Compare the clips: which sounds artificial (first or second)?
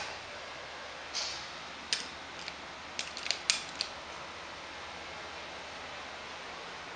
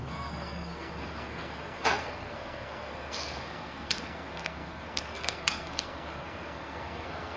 second